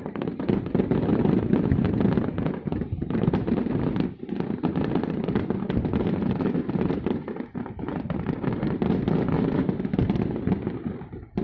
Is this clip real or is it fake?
fake